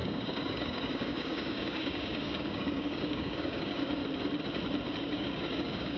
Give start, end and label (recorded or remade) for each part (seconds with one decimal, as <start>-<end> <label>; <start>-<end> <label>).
0.0-4.0 remade; 4.0-5.0 recorded; 5.0-6.0 remade